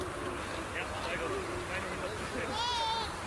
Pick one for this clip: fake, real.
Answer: real